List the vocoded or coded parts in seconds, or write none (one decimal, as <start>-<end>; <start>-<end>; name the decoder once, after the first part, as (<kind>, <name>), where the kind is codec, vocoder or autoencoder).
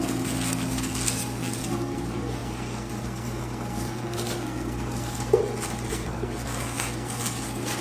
0.0-5.4 (codec, SNAC); 5.9-7.8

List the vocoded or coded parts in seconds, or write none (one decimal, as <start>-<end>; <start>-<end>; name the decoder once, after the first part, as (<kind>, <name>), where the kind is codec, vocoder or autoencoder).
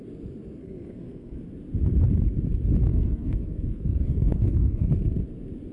0.6-1.4 (codec, SNAC); 2.9-4.9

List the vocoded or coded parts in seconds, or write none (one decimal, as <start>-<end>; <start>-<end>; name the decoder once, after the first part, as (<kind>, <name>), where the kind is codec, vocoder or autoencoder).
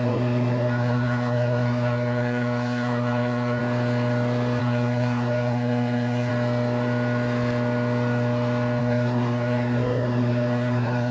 0.0-3.6 (codec, SNAC); 4.6-6.3; 8.8-11.1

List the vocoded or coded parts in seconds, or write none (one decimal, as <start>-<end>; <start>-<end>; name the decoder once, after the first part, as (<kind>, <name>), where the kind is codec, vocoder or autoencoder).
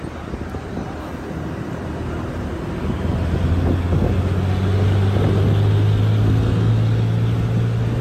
6.2-6.7 (codec, SNAC)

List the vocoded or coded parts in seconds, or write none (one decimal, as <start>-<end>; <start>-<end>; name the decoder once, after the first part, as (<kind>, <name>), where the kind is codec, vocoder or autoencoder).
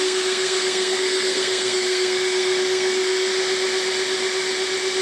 0.0-3.3 (codec, SNAC)